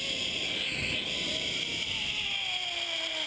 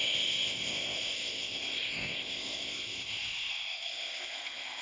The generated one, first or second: second